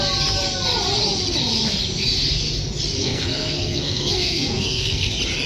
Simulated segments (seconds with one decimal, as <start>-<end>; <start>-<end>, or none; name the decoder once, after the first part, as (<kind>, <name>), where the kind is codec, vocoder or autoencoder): 3.0-5.1 (codec, SNAC)